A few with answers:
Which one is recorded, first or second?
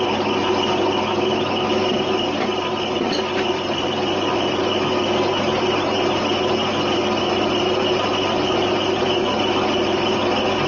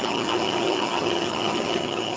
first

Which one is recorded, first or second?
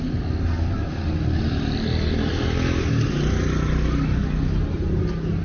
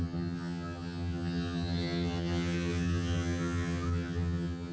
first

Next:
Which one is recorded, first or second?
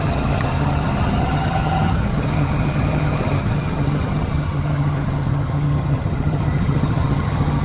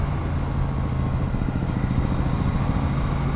second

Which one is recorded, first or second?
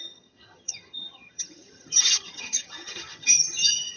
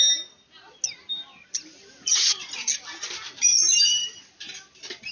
second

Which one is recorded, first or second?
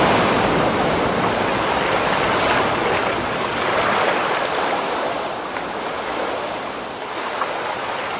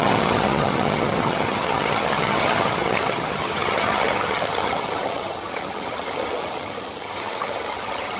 first